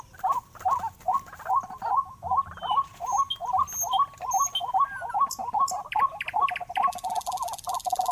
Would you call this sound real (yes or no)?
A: yes